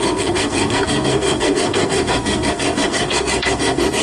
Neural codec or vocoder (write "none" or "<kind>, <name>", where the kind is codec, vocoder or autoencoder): codec, SNAC